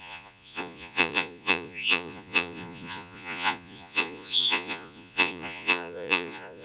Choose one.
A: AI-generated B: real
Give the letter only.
A